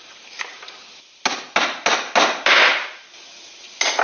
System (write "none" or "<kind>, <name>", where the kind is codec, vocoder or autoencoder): none